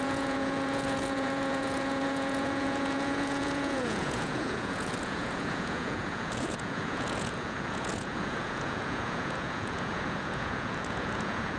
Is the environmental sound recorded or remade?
remade